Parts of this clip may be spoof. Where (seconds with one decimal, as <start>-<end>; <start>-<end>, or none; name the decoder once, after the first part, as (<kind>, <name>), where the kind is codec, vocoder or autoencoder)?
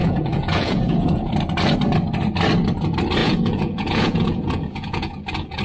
0.0-1.3 (vocoder, Vocos); 3.2-5.6